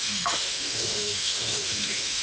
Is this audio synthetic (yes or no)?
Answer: yes